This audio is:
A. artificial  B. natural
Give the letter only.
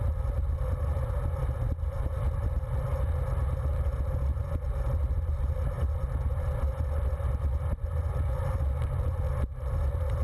B